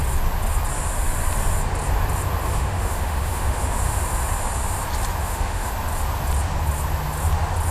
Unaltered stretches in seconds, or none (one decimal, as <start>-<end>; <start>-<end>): 0.0-2.4; 4.0-5.2; 5.7-7.7